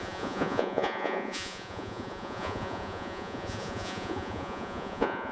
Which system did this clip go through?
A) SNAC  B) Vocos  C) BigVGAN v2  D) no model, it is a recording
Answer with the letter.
B